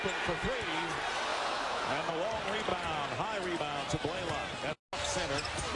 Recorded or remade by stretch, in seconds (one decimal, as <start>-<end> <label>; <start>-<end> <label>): 0.0-1.3 recorded; 1.3-2.1 remade; 2.1-5.8 recorded

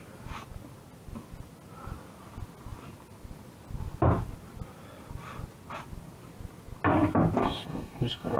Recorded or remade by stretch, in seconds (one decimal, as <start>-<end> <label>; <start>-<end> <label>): 0.0-7.4 recorded; 7.4-8.4 remade

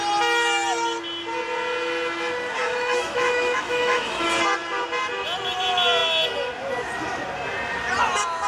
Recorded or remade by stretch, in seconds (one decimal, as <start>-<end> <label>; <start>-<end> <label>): 0.0-2.6 recorded; 2.6-4.3 remade; 4.3-8.5 recorded

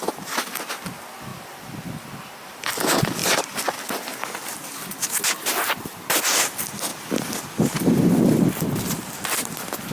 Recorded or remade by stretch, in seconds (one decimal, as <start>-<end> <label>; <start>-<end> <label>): 0.0-3.2 recorded; 3.2-3.8 remade; 3.8-6.9 recorded; 6.9-8.7 remade; 8.7-9.9 recorded

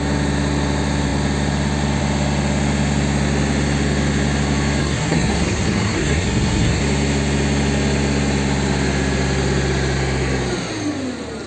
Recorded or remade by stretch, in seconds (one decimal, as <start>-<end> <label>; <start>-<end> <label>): 0.0-4.8 recorded; 4.8-6.8 remade; 6.8-11.5 recorded